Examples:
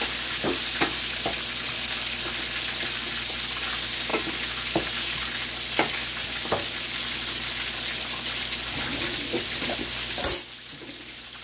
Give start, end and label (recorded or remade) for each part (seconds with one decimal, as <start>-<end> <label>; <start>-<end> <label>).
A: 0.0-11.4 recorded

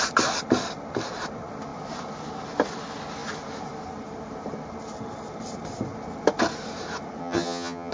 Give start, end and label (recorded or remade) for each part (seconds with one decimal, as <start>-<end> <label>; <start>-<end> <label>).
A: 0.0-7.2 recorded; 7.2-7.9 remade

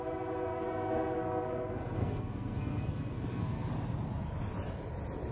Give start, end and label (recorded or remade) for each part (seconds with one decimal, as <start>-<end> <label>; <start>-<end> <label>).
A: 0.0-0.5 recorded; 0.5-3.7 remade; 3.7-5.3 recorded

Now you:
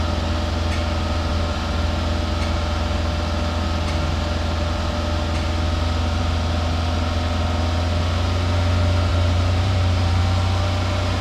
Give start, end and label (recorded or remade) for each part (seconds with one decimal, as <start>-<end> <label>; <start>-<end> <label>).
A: 0.0-9.1 recorded; 9.1-10.2 remade; 10.2-11.2 recorded

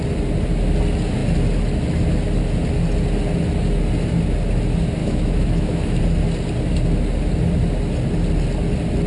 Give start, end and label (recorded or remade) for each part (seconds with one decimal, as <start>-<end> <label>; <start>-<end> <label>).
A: 0.0-5.0 recorded; 5.0-6.0 remade; 6.0-9.1 recorded